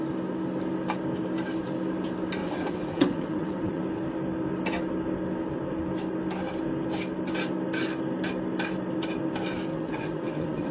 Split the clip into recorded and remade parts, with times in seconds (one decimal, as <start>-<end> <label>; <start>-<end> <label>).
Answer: 0.0-2.4 recorded; 2.4-3.8 remade; 3.8-9.7 recorded; 9.7-10.7 remade

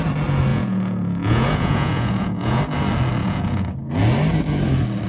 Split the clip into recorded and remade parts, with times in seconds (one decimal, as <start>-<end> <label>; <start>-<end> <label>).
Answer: 0.0-0.5 recorded; 0.5-2.6 remade; 2.6-3.2 recorded; 3.2-3.9 remade; 3.9-5.1 recorded

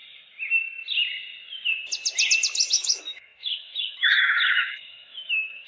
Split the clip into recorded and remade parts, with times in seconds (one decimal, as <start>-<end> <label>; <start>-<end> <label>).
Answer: 0.0-2.7 recorded; 2.7-5.7 remade

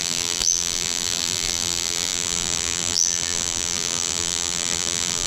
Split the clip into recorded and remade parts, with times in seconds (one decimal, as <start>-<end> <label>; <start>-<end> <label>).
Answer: 0.0-5.3 remade

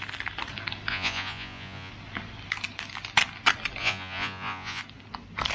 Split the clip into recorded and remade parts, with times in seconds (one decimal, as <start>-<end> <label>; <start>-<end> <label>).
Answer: 0.0-0.9 recorded; 0.9-1.9 remade; 1.9-3.8 recorded; 3.8-4.8 remade; 4.8-5.5 recorded

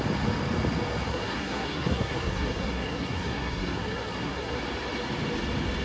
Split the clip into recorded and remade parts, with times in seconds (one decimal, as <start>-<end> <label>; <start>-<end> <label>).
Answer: 0.0-1.1 recorded; 1.1-4.6 remade; 4.6-5.8 recorded

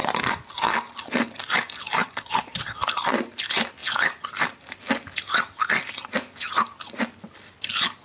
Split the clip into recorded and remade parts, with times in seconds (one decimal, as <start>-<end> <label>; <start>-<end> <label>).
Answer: 0.0-2.0 recorded; 2.0-2.8 remade; 2.8-8.0 recorded